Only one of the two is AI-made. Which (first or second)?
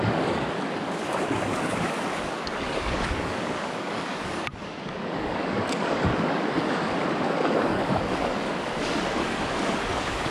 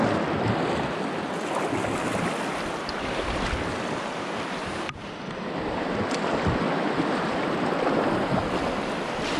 first